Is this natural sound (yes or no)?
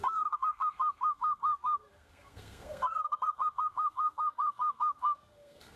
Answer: no